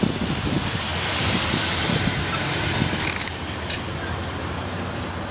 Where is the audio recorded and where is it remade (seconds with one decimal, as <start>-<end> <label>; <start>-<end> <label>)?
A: 0.0-3.2 recorded; 3.2-3.8 remade; 3.8-4.2 recorded; 4.2-5.3 remade

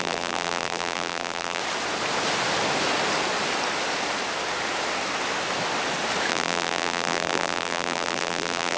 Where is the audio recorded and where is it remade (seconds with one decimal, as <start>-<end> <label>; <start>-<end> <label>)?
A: 0.0-1.6 remade; 1.6-6.3 recorded; 6.3-8.8 remade

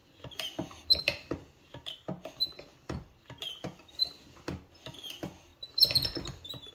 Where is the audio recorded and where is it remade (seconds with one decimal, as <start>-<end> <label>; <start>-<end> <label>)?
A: 0.0-1.0 remade; 1.0-2.7 recorded; 2.7-4.2 remade; 4.2-5.5 recorded; 5.5-6.7 remade